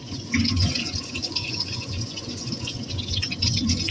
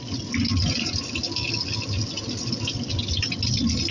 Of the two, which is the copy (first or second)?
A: first